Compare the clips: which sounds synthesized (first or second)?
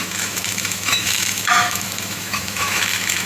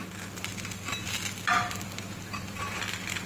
first